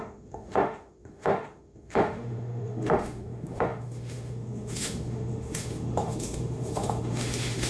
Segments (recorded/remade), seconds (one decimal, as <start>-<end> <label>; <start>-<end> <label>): 0.0-7.7 remade